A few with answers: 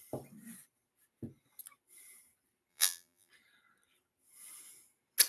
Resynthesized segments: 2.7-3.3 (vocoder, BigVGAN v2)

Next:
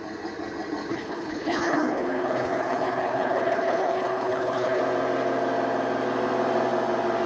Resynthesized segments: 0.9-4.8 (codec, HILCodec)

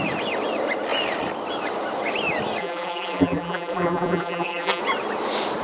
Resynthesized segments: 2.6-4.8 (vocoder, BigVGAN v2)

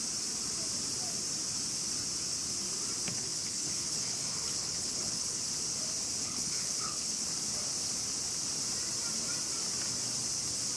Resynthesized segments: 3.1-5.4 (codec, HILCodec); 6.2-7.3

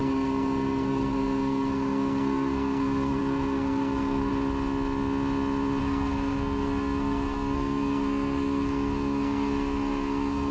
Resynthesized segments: 0.0-4.3 (codec, SNAC); 5.8-10.5